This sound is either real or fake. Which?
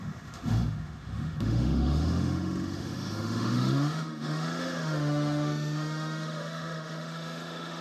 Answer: fake